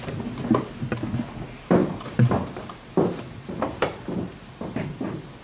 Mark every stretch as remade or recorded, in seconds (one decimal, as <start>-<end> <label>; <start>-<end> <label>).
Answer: 0.0-1.8 recorded; 1.8-5.0 remade; 5.0-5.4 recorded